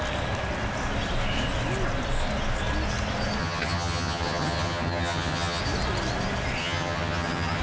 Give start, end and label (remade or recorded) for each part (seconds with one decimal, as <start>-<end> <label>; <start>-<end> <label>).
0.0-3.4 recorded; 3.4-5.6 remade; 5.6-6.6 recorded; 6.6-7.6 remade